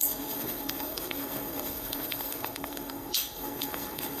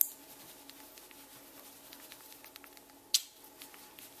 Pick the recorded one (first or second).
second